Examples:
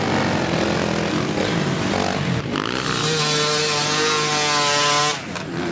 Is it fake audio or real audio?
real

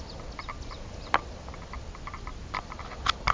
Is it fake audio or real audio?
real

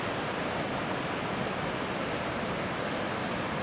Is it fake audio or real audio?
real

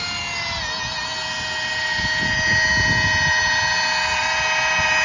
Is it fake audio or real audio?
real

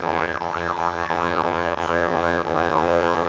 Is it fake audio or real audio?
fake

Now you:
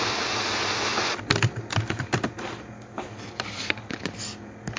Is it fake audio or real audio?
real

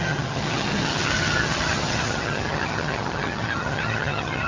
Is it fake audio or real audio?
fake